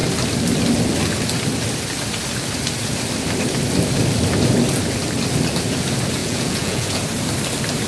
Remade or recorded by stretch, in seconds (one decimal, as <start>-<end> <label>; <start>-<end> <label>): 0.0-6.2 recorded; 6.2-7.0 remade; 7.0-7.9 recorded